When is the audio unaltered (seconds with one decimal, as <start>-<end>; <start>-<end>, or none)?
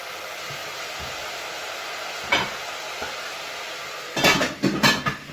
0.0-0.6; 3.8-5.3